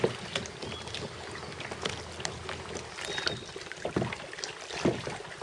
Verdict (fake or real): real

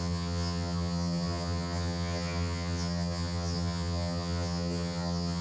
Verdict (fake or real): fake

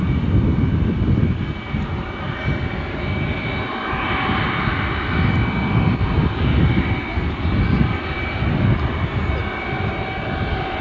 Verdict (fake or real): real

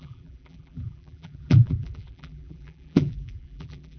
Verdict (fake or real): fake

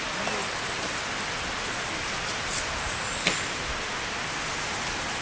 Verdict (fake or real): real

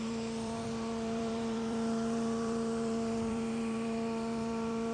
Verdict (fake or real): fake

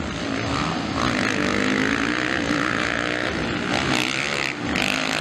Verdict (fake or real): real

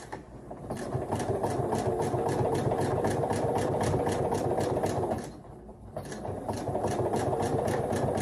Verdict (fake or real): real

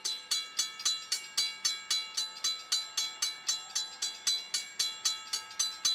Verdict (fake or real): real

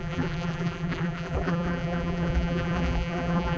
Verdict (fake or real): fake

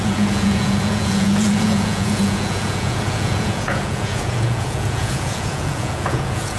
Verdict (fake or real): fake